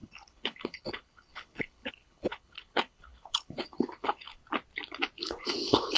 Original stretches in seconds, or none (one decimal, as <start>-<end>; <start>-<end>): 4.4-5.2